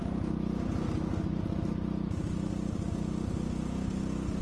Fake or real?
real